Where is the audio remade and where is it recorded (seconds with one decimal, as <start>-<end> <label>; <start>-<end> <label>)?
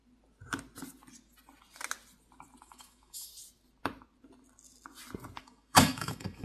0.0-2.6 recorded; 2.6-3.3 remade; 3.3-5.4 recorded; 5.4-6.4 remade